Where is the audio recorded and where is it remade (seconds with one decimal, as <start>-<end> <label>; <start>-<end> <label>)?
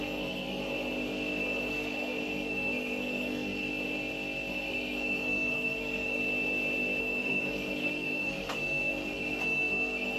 0.0-0.6 remade; 0.6-1.7 recorded; 1.7-3.7 remade; 3.7-4.5 recorded; 4.5-6.2 remade; 6.2-7.0 recorded; 7.0-10.2 remade